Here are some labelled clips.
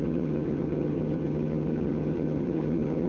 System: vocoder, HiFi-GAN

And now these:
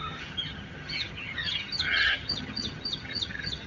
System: vocoder, HiFi-GAN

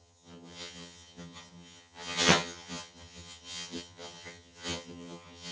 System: vocoder, HiFi-GAN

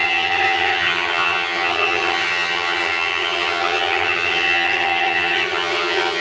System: vocoder, HiFi-GAN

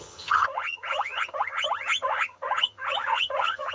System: vocoder, HiFi-GAN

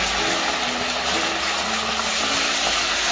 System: none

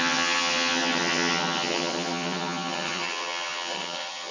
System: vocoder, HiFi-GAN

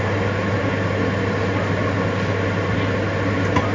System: none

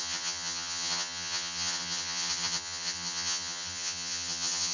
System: vocoder, HiFi-GAN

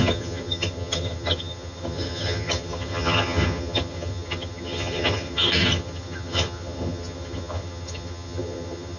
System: vocoder, HiFi-GAN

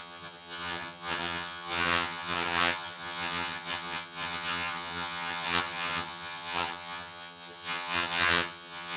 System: vocoder, HiFi-GAN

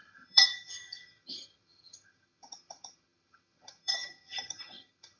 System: vocoder, HiFi-GAN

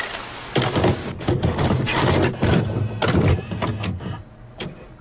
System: none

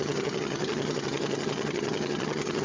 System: vocoder, HiFi-GAN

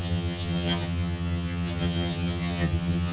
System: vocoder, HiFi-GAN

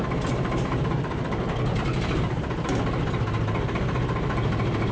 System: none